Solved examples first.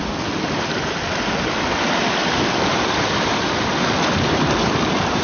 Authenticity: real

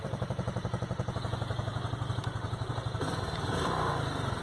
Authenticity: fake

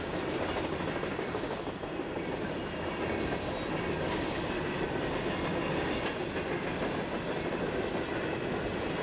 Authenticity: real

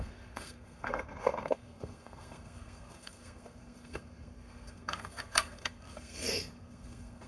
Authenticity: fake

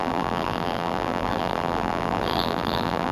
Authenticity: fake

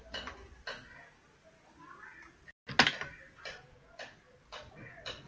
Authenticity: real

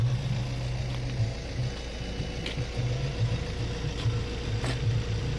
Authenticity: real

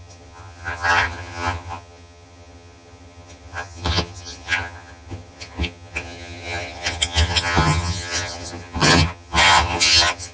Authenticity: fake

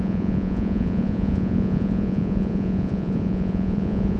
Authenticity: fake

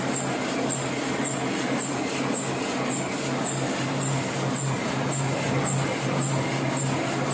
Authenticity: real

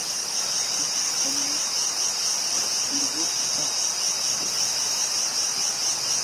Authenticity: real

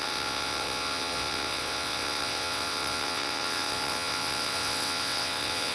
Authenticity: fake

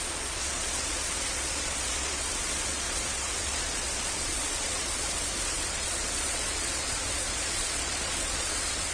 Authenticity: fake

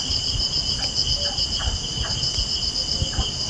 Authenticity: real